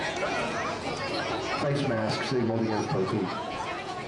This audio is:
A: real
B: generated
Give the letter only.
B